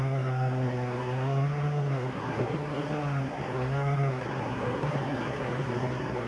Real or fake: fake